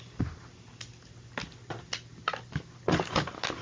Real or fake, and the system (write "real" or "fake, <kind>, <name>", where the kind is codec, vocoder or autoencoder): real